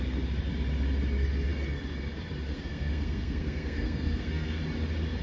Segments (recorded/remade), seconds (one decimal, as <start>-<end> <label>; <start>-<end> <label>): 0.0-2.5 recorded; 2.5-4.6 remade; 4.6-5.2 recorded